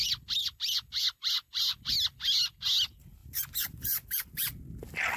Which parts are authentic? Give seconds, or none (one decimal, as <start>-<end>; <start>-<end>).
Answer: 0.0-5.2